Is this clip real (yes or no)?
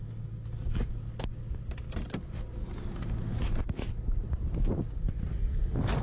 yes